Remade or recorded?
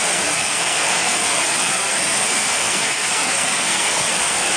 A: remade